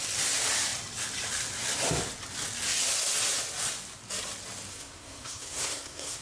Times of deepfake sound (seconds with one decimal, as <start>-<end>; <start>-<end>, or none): 4.7-6.2